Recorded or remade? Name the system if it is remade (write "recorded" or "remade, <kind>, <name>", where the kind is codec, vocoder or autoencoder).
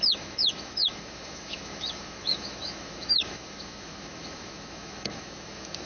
remade, autoencoder, DAC-VAE